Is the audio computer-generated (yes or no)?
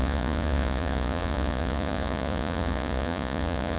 yes